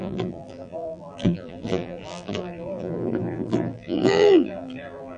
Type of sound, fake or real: fake